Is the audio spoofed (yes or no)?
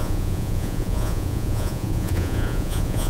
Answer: yes